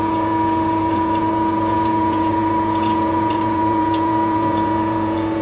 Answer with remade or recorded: remade